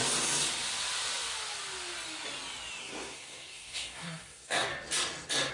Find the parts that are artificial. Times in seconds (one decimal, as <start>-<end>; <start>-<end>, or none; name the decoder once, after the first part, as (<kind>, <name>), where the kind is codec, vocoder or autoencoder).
2.8-4.7 (codec, SNAC)